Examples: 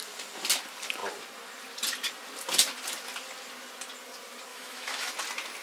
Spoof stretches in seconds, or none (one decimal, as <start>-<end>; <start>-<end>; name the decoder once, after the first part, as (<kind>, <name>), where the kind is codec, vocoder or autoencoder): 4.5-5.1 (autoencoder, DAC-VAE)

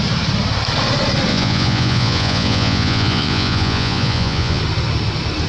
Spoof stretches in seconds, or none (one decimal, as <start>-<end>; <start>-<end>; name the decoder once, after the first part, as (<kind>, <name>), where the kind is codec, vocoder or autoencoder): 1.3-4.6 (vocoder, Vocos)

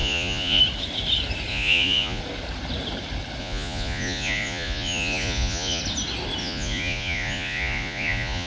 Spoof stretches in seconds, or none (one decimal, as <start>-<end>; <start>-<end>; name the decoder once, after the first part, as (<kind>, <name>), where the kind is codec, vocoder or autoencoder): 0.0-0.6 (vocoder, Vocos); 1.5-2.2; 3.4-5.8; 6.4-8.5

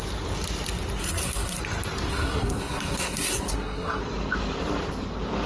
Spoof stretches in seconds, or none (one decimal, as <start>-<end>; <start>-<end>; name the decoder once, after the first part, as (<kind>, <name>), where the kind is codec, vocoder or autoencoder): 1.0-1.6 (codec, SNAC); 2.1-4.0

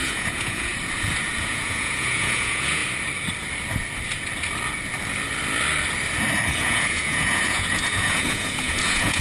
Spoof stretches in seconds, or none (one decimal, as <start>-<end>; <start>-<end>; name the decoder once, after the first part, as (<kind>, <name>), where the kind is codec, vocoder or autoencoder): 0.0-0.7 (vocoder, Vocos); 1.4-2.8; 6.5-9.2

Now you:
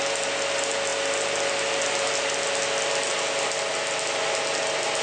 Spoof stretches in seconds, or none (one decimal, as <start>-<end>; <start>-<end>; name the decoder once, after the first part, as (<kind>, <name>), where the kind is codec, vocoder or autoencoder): none

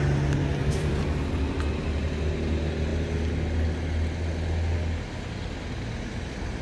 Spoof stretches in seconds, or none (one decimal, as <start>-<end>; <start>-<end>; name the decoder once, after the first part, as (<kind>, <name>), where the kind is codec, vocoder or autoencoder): 0.6-1.5 (vocoder, BigVGAN v2)

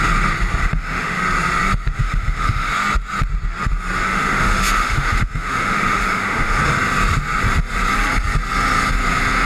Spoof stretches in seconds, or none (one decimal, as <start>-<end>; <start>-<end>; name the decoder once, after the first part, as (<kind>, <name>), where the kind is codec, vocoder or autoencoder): 0.6-1.2 (autoencoder, DAC-VAE); 2.0-2.7; 4.1-6.6